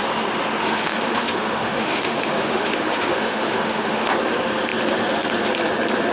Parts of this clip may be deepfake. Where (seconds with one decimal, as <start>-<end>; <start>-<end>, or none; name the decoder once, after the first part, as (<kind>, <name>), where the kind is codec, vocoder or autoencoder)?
0.6-4.1 (autoencoder, DAC-VAE)